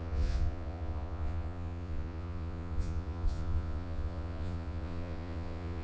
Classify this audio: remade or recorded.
remade